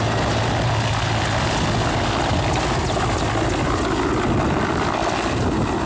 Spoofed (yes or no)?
no